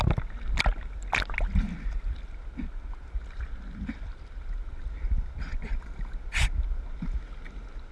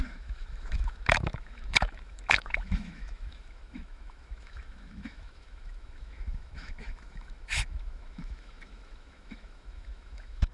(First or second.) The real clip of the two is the first